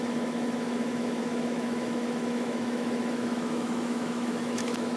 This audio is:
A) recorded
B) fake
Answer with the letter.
B